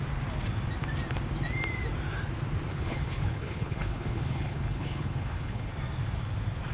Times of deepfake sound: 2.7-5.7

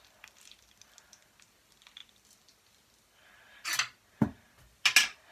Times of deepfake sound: none